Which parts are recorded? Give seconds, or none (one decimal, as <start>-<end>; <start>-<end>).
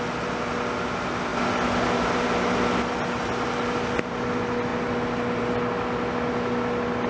0.0-7.1